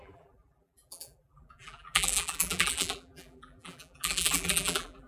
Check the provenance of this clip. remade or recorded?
remade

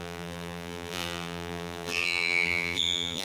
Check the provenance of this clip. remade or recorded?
remade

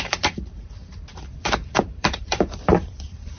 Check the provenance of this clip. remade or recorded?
remade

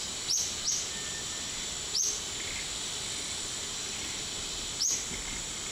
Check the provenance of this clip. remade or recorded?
recorded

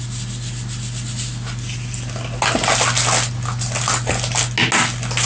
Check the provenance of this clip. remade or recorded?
recorded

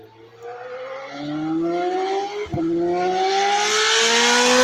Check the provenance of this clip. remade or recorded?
recorded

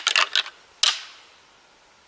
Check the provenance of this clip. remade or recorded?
recorded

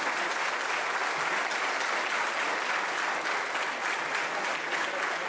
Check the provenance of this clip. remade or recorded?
recorded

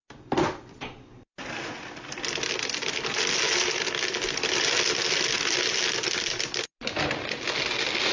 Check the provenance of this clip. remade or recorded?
recorded